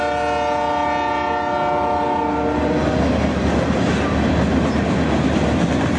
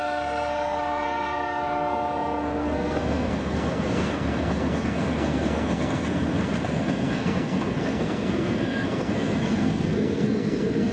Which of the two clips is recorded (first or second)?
first